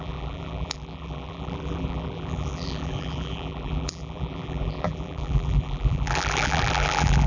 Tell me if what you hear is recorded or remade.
remade